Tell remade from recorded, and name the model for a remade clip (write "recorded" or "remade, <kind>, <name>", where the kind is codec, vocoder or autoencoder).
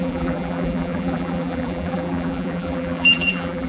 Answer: remade, vocoder, BigVGAN v2